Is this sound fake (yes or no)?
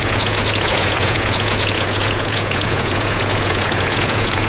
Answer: yes